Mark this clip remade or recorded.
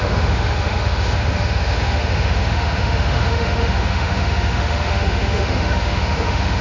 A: remade